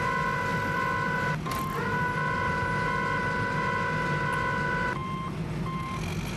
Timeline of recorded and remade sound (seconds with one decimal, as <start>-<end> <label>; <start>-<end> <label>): 0.0-6.4 recorded